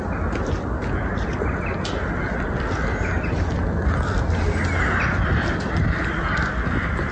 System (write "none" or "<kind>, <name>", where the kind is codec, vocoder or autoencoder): none